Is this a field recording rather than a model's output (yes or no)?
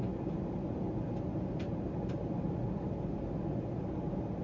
yes